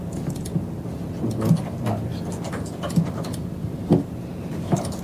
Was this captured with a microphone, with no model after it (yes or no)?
yes